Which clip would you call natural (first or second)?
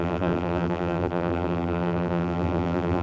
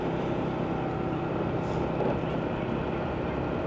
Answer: second